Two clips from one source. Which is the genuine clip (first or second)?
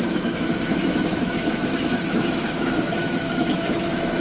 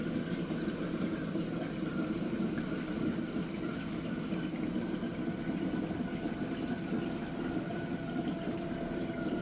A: second